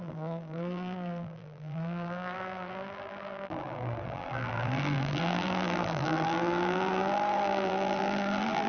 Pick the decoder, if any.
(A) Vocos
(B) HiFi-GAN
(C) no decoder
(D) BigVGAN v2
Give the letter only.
D